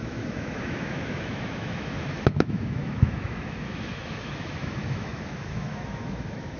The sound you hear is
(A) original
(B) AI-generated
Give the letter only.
B